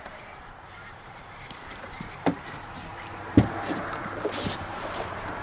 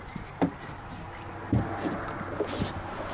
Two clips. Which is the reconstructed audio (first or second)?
first